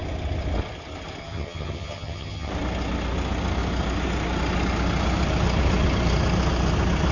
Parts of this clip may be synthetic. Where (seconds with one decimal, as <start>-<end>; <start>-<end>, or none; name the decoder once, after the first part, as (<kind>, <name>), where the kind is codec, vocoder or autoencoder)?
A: 1.2-2.5 (vocoder, HiFi-GAN)